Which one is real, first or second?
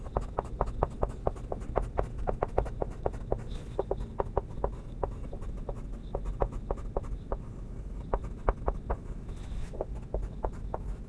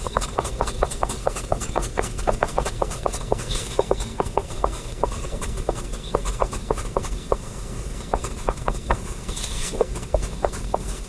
first